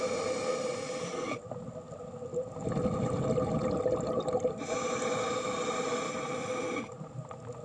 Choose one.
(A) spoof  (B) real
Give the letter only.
B